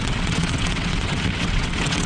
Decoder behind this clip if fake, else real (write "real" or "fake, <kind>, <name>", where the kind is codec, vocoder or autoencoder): fake, vocoder, WaveNeXt